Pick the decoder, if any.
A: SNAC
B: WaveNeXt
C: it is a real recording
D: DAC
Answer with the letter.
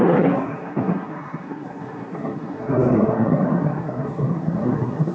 A